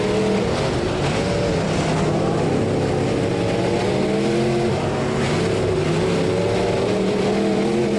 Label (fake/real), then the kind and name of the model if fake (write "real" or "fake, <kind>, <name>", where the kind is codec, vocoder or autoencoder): real